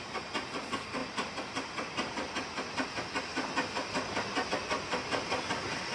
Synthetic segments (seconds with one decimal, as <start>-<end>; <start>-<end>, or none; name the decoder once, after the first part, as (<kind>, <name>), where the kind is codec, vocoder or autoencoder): 0.0-1.0 (vocoder, BigVGAN v2); 4.5-5.9